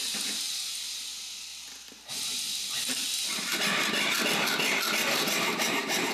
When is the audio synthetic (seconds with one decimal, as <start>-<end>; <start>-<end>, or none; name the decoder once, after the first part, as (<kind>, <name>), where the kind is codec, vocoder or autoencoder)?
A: 1.5-4.1 (vocoder, BigVGAN v2)